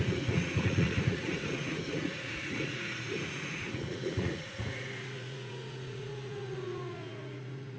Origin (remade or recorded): remade